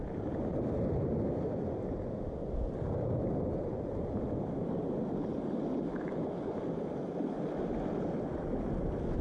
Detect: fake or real real